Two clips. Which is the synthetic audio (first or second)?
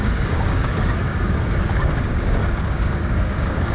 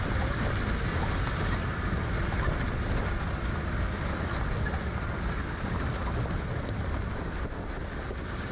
first